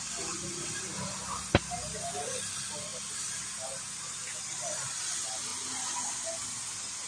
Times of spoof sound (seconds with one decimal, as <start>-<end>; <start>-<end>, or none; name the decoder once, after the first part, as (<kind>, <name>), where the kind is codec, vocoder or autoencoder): none